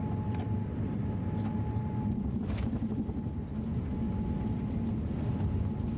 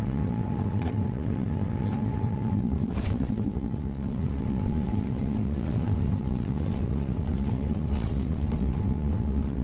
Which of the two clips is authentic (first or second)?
first